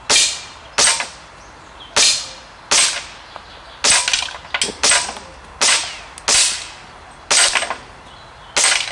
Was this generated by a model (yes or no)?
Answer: no